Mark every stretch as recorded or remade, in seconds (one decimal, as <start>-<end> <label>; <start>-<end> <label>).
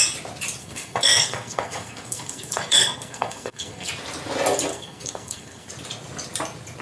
0.0-0.6 recorded; 0.6-3.9 remade; 3.9-4.7 recorded; 4.7-5.7 remade; 5.7-6.8 recorded